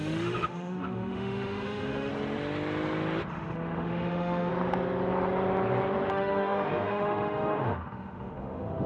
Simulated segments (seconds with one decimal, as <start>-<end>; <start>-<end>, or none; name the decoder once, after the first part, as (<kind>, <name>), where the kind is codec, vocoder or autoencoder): 0.0-2.1 (autoencoder, DAC-VAE); 3.3-4.5; 6.1-8.9